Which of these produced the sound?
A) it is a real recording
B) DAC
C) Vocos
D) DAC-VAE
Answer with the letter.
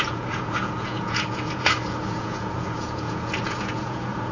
C